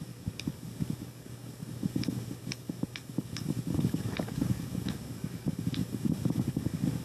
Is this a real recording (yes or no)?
no